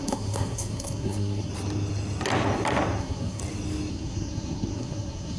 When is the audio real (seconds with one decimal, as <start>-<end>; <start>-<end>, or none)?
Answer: 1.5-3.0; 3.4-3.9

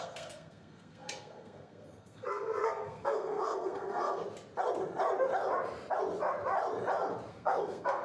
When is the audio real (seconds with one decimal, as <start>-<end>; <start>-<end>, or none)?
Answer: 4.2-7.3

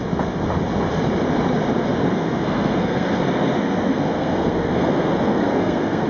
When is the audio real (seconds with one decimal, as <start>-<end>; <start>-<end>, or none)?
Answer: 0.0-2.0